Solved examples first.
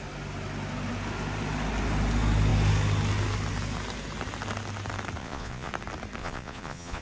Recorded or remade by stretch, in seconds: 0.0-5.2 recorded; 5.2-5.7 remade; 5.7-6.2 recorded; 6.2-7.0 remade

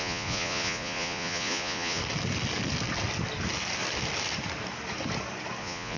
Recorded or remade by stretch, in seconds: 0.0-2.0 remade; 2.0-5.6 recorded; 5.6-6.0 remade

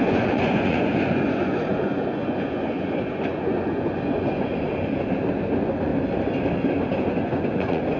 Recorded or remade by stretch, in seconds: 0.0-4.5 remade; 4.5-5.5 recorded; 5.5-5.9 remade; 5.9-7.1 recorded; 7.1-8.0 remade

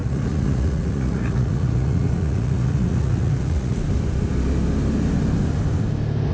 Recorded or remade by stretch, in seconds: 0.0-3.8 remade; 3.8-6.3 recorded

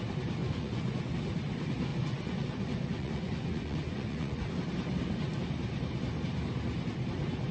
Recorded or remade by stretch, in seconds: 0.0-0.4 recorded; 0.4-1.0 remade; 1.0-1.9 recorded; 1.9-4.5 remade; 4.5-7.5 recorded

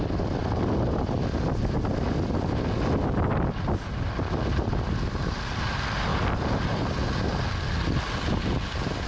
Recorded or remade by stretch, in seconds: 0.0-9.1 recorded